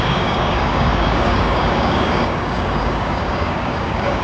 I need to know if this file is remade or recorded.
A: remade